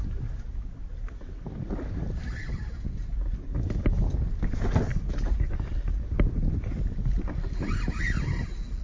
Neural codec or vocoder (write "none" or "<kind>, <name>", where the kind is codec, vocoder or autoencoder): none